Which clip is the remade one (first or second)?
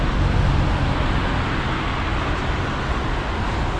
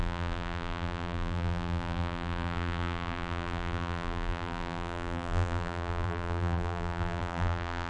second